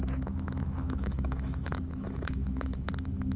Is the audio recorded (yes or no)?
no